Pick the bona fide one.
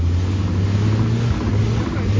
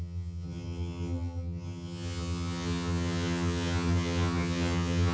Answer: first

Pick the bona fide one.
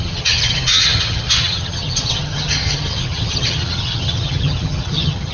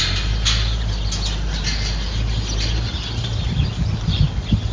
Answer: second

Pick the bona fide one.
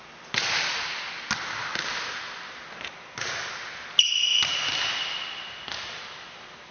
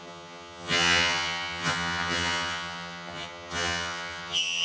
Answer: first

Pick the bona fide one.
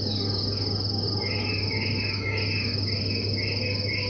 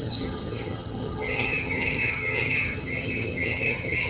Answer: first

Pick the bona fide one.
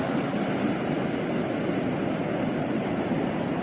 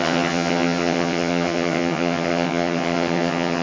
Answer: first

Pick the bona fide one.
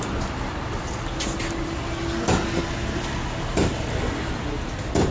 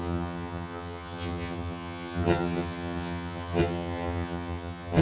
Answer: first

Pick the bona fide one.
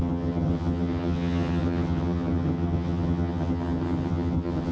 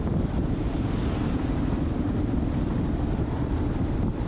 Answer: second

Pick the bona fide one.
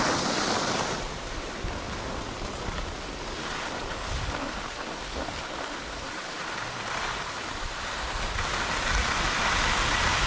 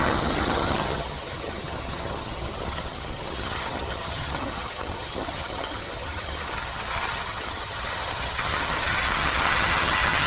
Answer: first